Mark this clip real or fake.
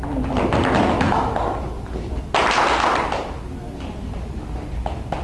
real